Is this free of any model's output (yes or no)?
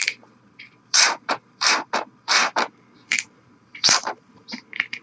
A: no